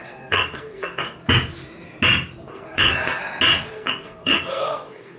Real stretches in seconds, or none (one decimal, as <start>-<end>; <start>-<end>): 1.2-2.5; 3.2-3.7